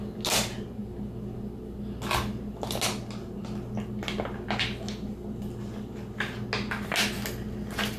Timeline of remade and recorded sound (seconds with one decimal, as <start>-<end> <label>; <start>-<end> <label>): 0.0-8.0 recorded